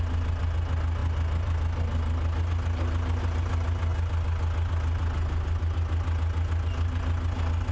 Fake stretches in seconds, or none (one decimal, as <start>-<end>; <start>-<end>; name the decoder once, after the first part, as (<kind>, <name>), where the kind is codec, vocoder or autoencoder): none